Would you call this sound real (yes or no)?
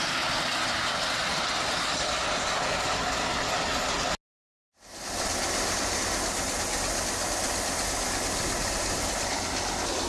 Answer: yes